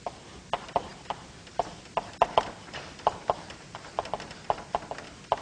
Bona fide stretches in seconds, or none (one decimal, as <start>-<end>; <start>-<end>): 0.9-3.5